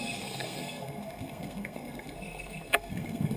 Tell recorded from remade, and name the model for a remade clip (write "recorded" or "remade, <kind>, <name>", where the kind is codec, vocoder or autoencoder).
remade, codec, SNAC